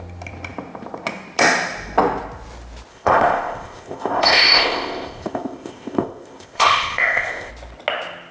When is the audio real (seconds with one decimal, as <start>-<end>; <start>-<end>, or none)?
0.0-2.9; 7.5-8.3